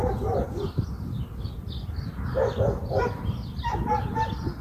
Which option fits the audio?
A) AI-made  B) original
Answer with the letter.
B